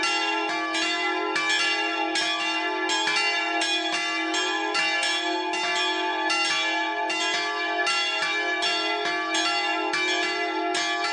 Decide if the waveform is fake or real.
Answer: real